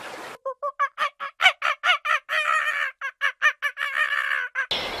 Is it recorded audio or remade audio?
recorded